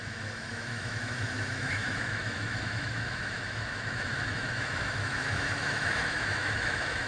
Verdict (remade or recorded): remade